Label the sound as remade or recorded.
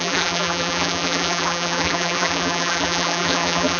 remade